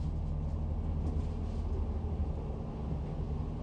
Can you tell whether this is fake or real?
real